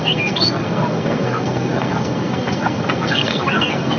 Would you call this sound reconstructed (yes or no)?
yes